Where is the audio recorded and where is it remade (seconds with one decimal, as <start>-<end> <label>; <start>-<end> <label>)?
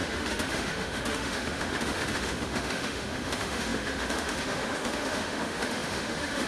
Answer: 0.0-6.5 remade